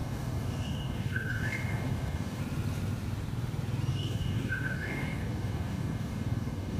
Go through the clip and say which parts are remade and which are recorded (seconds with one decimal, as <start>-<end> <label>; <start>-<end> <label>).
0.0-2.4 remade; 2.4-3.9 recorded; 3.9-6.8 remade